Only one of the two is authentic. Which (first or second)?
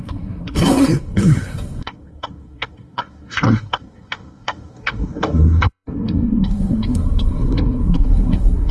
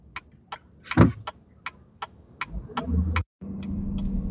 second